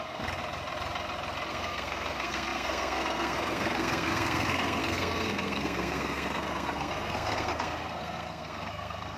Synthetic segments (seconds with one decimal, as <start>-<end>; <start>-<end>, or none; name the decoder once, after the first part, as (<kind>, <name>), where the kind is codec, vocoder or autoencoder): 0.0-0.4 (codec, SNAC); 1.5-9.2